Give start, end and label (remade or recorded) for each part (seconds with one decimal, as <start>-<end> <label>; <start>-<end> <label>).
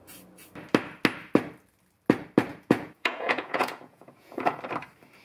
0.0-2.5 recorded; 2.5-4.6 remade; 4.6-5.2 recorded